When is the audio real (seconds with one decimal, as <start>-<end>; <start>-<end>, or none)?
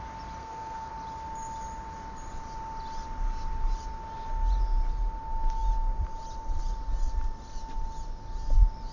0.0-0.4; 0.9-8.9